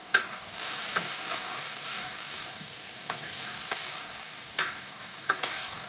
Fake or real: fake